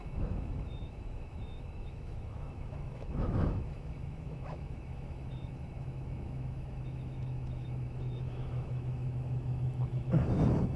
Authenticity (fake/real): fake